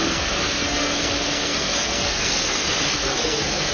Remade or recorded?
remade